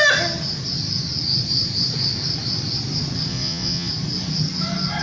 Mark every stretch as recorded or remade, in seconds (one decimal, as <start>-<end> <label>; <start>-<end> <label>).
0.0-3.3 recorded; 3.3-3.9 remade; 3.9-5.0 recorded